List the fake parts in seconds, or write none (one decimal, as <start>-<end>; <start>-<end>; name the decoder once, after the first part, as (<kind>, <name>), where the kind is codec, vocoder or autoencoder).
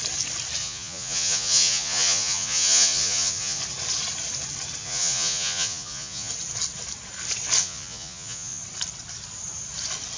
0.6-3.6 (vocoder, Vocos); 4.8-6.3; 7.6-8.6